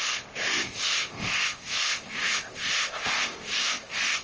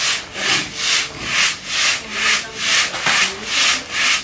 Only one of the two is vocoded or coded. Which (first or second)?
first